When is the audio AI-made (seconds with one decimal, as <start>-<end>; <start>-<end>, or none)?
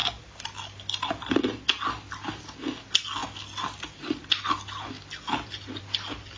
none